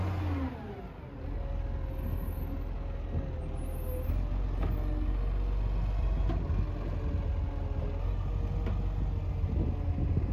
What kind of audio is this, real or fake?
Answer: real